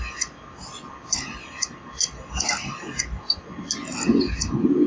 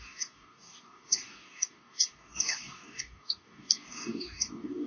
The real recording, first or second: first